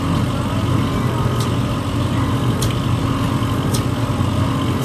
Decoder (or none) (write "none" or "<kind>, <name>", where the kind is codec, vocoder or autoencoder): none